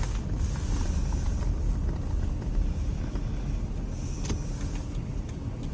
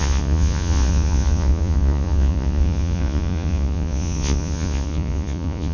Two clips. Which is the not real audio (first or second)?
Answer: second